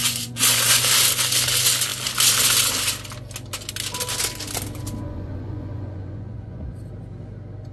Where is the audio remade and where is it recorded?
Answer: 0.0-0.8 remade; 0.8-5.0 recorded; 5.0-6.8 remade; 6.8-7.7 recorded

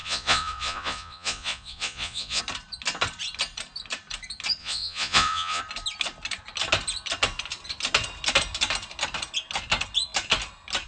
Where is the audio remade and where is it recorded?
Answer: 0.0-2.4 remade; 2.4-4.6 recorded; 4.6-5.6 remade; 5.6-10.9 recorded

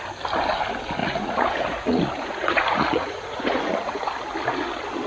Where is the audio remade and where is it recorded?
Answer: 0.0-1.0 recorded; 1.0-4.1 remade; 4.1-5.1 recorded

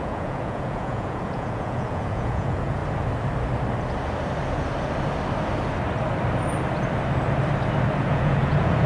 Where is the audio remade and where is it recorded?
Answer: 0.0-2.8 remade; 2.8-8.0 recorded; 8.0-8.9 remade

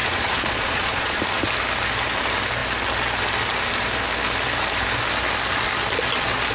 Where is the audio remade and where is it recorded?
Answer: 0.0-1.2 remade; 1.2-6.5 recorded